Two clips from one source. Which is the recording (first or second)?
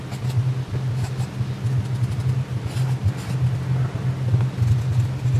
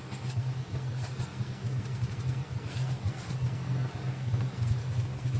first